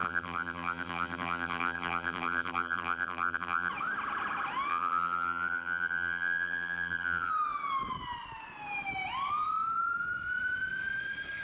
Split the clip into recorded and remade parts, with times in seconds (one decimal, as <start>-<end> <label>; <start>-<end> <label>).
0.0-3.7 remade; 3.7-4.7 recorded; 4.7-7.3 remade; 7.3-11.4 recorded